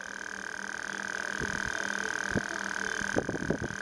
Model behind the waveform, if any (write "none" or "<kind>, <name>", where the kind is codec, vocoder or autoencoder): none